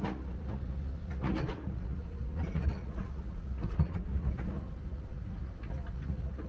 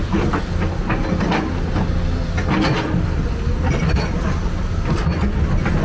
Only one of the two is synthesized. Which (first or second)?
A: first